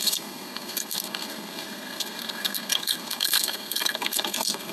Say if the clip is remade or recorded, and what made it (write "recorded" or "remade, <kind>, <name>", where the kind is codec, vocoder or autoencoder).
remade, codec, SNAC